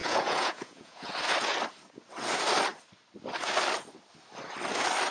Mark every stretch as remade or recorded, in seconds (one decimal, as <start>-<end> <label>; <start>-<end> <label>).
0.0-1.1 remade; 1.1-5.1 recorded